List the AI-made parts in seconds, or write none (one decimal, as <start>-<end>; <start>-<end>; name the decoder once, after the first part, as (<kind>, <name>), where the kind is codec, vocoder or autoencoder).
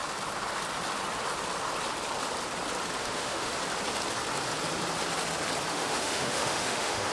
3.0-3.5 (autoencoder, DAC-VAE); 5.7-7.1